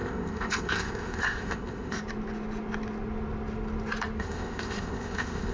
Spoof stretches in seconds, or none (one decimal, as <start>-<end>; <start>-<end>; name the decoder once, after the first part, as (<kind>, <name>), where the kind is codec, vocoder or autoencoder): 0.0-2.0 (codec, ZipCodec); 4.2-5.5